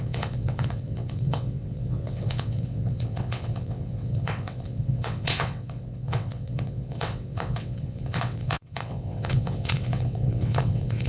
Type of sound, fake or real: fake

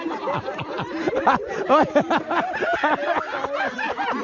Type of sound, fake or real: real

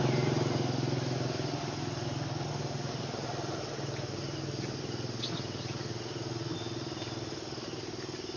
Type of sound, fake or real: real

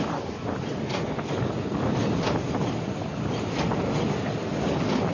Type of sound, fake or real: real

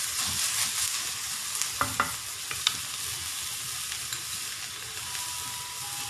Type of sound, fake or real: real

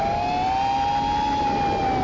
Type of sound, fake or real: real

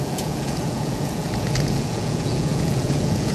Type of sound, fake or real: fake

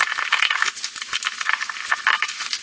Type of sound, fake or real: real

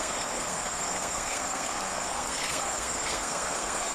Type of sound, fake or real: fake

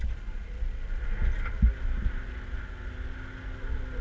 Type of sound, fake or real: real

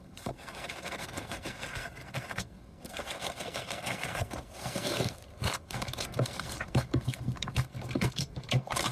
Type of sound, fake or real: fake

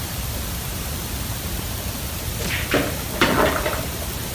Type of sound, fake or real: fake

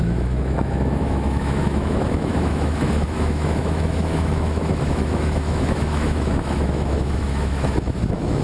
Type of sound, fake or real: fake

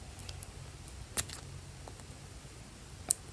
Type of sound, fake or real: real